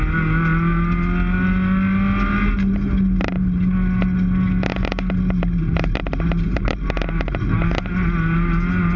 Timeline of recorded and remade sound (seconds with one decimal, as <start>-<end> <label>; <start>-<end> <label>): 0.0-9.0 recorded